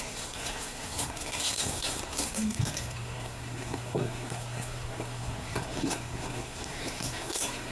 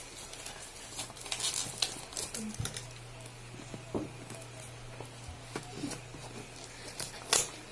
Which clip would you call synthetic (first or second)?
first